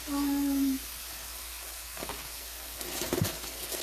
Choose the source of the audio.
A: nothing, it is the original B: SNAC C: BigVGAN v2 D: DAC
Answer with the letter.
B